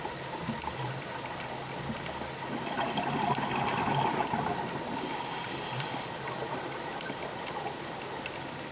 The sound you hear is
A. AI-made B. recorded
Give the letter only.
B